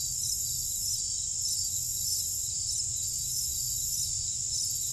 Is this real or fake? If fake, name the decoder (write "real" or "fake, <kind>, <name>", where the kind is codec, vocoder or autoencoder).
real